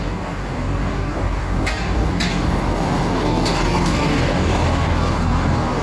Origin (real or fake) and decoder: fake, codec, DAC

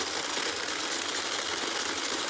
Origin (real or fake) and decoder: real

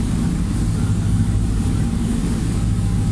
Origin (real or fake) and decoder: fake, codec, DAC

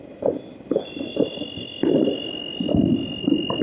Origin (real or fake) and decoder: real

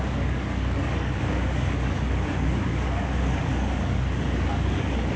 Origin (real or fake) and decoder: fake, codec, DAC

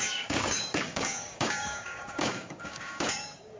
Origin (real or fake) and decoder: fake, codec, DAC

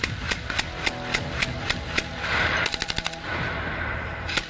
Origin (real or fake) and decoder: real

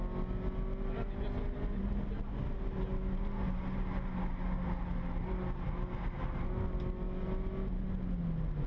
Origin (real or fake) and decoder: real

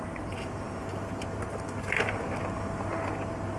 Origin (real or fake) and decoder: real